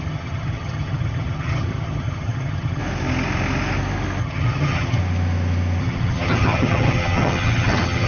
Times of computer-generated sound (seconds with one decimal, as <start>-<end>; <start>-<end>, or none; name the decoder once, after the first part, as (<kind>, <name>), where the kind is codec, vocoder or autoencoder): 0.0-2.8 (vocoder, HiFi-GAN); 4.2-5.0; 5.8-8.1